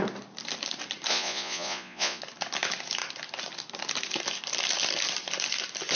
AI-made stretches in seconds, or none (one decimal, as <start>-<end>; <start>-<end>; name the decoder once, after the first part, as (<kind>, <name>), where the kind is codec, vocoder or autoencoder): 1.1-2.2 (vocoder, Vocos)